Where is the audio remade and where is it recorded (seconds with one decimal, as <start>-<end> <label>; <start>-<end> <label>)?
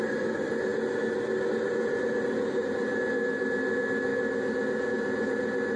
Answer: 0.0-5.8 recorded